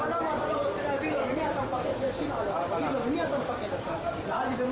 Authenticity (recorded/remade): recorded